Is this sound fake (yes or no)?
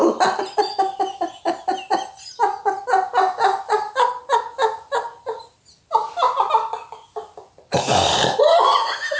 no